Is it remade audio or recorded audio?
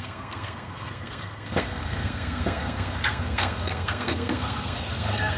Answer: remade